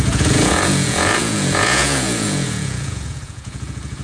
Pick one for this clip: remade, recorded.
remade